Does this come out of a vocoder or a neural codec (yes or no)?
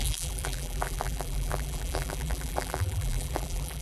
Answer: yes